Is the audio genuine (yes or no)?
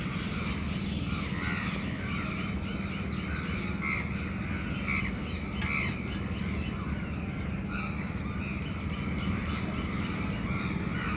yes